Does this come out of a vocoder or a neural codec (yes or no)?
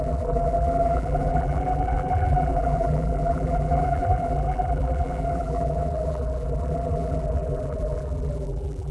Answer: yes